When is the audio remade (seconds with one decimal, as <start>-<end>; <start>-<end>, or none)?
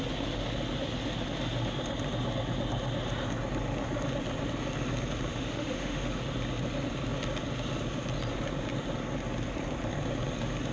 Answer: 5.3-6.2